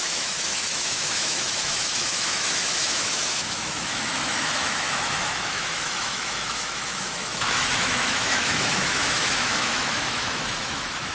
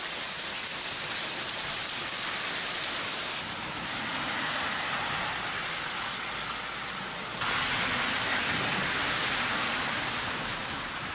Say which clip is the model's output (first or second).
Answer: first